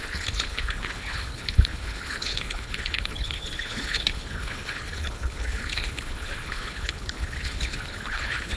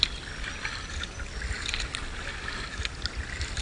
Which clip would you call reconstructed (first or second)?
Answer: first